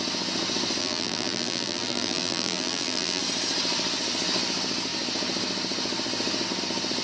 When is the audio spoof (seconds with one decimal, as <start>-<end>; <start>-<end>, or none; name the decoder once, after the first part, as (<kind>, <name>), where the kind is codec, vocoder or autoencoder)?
0.8-3.2 (vocoder, BigVGAN v2)